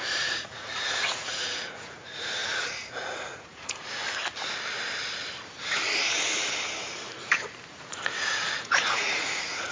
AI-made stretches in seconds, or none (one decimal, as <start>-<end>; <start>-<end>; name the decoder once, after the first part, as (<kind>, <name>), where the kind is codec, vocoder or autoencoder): 0.0-4.0 (vocoder, Vocos); 7.7-9.7